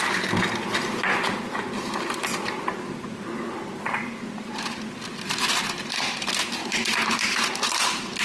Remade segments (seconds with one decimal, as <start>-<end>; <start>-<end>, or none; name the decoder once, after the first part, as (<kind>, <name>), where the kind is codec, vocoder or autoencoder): none